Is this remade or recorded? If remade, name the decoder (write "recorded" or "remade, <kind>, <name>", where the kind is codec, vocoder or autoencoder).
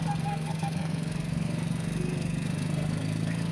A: remade, codec, SNAC